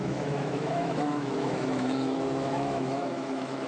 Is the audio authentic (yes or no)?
no